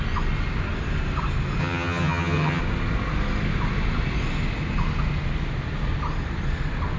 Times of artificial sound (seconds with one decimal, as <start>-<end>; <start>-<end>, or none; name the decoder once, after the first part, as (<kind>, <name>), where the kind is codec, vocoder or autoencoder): 1.6-2.6 (vocoder, HiFi-GAN)